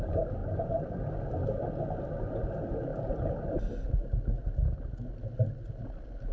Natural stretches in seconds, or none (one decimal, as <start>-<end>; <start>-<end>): 0.0-0.4; 1.0-6.3

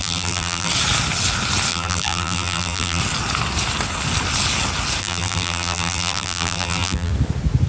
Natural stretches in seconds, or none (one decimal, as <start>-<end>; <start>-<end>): 0.7-1.7; 3.0-5.0; 7.1-7.7

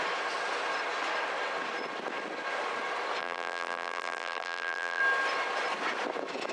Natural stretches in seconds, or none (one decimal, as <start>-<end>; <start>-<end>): 0.0-3.2; 5.0-6.5

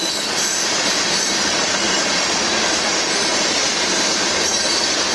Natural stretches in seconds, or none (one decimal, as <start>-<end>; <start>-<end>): 0.0-0.5; 1.7-3.3; 4.5-5.1